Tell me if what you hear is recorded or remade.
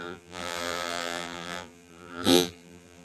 remade